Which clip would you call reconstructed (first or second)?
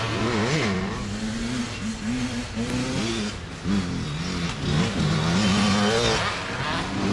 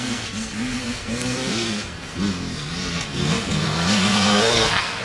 second